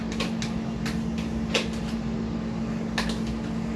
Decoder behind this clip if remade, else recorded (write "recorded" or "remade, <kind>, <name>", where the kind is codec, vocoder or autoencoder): recorded